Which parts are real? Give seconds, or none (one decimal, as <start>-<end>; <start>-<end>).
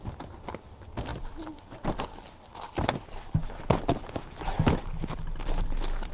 0.0-6.1